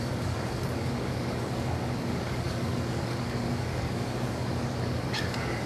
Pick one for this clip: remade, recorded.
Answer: remade